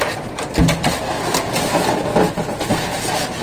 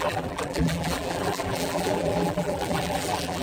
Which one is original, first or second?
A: first